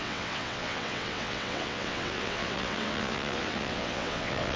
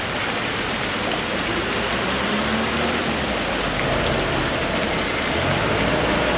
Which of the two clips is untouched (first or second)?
second